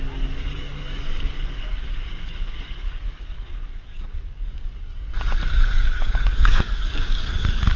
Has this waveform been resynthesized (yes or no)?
yes